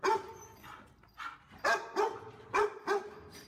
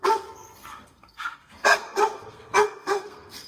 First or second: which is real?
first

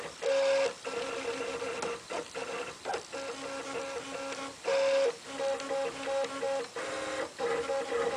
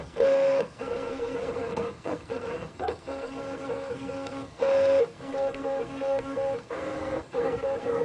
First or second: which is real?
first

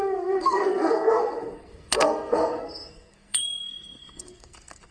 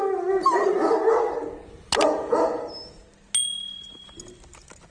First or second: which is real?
second